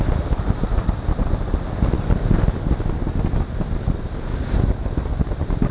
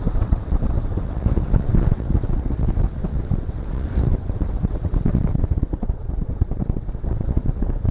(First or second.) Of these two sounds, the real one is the first